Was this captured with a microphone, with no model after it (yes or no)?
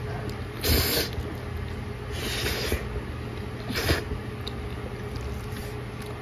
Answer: yes